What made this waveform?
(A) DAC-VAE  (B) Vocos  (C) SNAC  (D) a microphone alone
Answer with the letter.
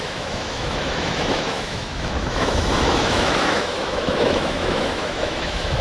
A